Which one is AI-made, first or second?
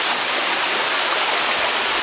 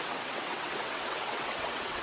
second